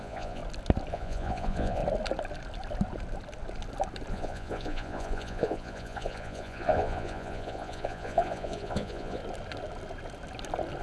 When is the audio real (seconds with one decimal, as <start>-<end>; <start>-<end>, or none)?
0.4-0.9; 1.8-4.1; 9.2-10.8